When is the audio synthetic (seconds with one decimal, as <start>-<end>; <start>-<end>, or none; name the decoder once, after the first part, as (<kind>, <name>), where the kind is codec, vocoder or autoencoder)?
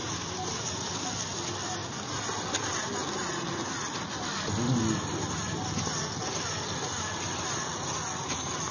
none